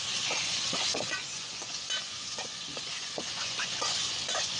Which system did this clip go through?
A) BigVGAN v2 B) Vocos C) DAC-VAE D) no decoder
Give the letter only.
B